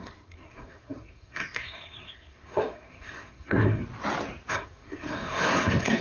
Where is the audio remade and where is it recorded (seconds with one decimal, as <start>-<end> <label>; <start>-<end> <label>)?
0.0-3.8 remade; 3.8-4.5 recorded; 4.5-6.0 remade